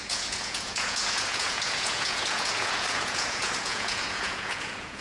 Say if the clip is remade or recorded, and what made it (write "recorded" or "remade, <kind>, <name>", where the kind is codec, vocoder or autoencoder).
remade, vocoder, Vocos